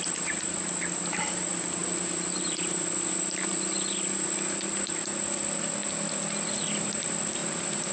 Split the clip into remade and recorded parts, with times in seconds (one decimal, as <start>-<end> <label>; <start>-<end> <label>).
0.0-5.8 remade; 5.8-6.6 recorded; 6.6-7.9 remade